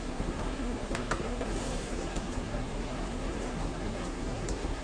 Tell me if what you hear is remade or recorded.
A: remade